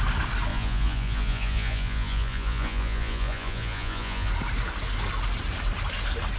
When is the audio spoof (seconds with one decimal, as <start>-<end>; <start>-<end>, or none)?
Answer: 0.5-4.3